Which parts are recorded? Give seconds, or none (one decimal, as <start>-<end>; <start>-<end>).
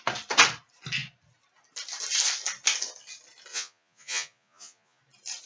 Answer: 0.0-3.5; 5.0-5.5